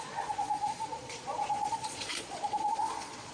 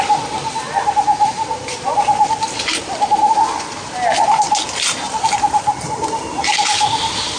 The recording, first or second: second